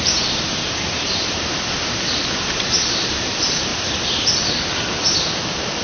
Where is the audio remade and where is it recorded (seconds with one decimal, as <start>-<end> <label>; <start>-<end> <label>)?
0.0-3.7 remade; 3.7-4.9 recorded; 4.9-5.8 remade